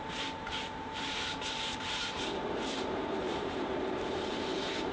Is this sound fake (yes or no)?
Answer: yes